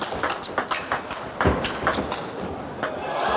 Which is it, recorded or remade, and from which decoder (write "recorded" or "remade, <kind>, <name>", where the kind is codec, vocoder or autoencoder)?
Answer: recorded